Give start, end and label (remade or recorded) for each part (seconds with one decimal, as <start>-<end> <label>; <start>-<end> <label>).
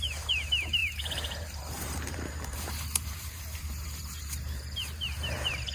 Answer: 0.0-5.7 remade